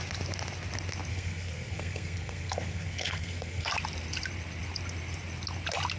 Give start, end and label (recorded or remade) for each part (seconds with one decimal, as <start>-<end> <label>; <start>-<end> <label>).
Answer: 0.0-1.1 recorded; 1.1-3.7 remade; 3.7-6.0 recorded